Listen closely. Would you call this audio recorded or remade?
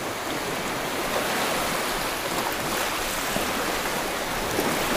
recorded